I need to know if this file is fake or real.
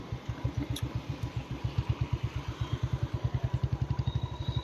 fake